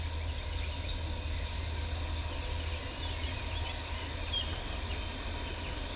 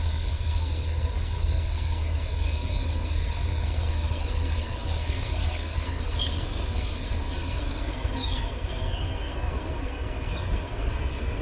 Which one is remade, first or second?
second